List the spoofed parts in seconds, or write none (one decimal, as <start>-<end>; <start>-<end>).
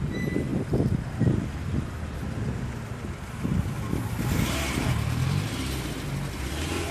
none